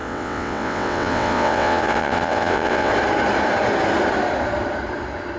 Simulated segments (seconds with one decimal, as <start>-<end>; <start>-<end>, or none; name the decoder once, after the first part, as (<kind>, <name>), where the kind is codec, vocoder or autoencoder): 0.0-2.9 (vocoder, WaveNeXt)